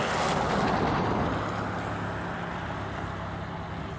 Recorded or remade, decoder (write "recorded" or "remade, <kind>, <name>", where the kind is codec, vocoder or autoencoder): recorded